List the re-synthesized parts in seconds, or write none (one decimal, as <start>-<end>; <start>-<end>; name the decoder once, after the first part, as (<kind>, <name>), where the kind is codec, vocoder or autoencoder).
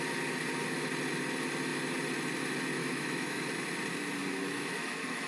2.8-3.4 (autoencoder, DAC-VAE); 4.2-5.3